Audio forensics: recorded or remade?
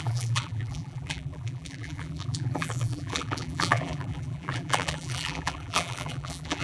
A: remade